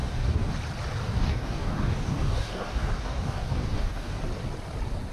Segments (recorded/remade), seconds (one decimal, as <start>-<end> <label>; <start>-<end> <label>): 0.0-0.5 remade; 0.5-1.2 recorded; 1.2-4.2 remade; 4.2-5.1 recorded